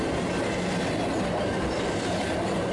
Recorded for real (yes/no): yes